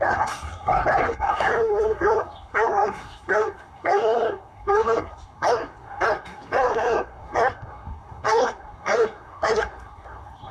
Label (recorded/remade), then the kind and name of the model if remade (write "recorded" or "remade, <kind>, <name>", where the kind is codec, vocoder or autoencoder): remade, codec, SNAC